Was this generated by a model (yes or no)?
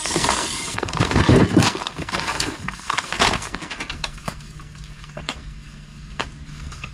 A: yes